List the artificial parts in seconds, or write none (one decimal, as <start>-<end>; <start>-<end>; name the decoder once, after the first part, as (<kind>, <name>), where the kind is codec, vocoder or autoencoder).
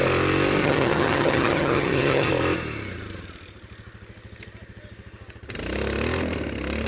0.6-2.3 (vocoder, HiFi-GAN)